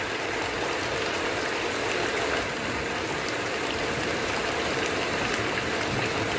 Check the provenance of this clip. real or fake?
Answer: real